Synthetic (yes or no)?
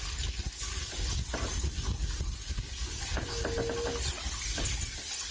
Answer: no